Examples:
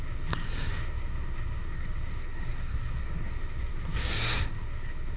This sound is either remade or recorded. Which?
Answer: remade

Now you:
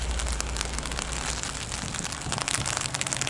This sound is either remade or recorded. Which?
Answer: recorded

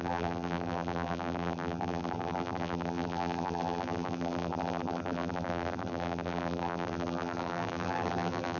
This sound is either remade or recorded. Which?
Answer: remade